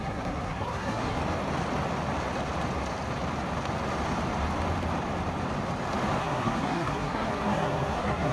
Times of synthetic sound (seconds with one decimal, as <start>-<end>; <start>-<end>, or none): 0.0-1.2; 6.2-8.3

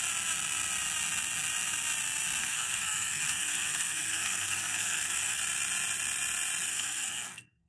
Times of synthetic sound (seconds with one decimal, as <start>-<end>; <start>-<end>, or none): 2.4-5.4; 6.7-7.7

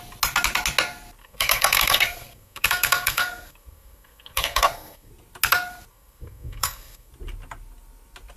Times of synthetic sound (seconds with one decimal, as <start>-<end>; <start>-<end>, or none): 1.2-5.1; 5.9-7.1

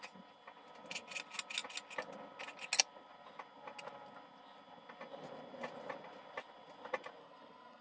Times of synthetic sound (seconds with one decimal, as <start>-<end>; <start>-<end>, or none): 7.2-7.8

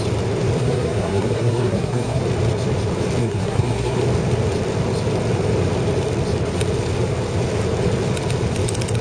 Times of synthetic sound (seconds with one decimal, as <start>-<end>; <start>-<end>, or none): 0.6-2.2; 3.2-4.0